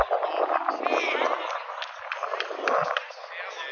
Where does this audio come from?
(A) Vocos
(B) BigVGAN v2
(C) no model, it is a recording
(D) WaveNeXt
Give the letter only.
C